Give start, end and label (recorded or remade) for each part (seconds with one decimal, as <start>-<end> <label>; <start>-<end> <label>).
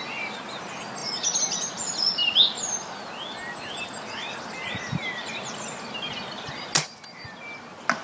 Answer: 0.0-8.0 recorded